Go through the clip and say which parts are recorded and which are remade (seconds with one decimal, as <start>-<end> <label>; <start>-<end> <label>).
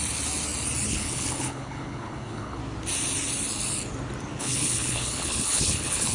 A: 0.0-0.9 recorded; 0.9-2.6 remade; 2.6-4.4 recorded; 4.4-6.1 remade